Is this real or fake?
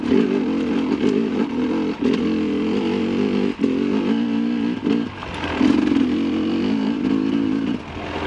real